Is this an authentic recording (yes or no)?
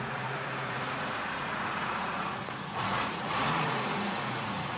no